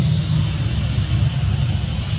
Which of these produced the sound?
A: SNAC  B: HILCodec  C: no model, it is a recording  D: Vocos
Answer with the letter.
C